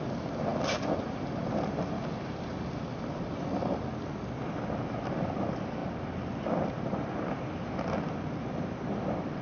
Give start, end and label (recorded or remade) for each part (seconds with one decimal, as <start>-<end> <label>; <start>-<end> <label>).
0.0-5.8 remade; 5.8-6.4 recorded; 6.4-9.4 remade